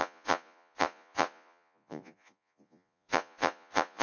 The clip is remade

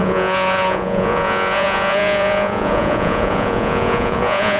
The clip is remade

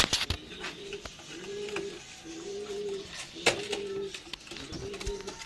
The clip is recorded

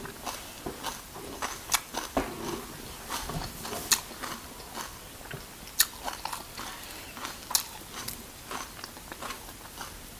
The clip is recorded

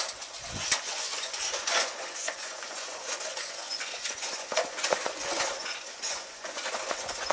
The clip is remade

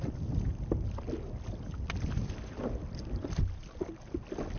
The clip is recorded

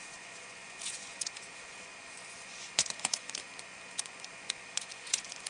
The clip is remade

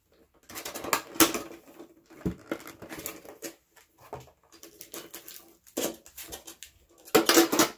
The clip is recorded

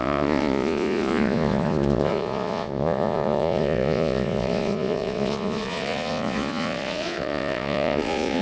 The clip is remade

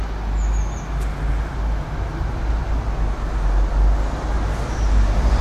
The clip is recorded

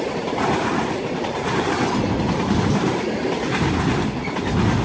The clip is recorded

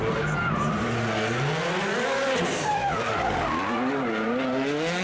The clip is recorded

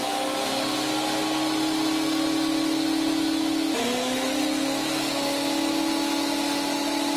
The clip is recorded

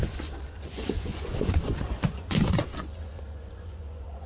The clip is remade